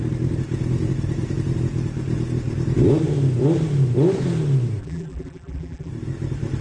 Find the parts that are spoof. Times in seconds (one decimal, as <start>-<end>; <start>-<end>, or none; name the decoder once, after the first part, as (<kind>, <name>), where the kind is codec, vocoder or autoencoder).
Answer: 4.8-5.9 (vocoder, BigVGAN v2)